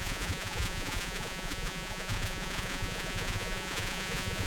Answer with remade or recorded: remade